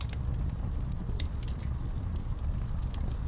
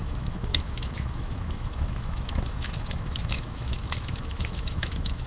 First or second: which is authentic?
first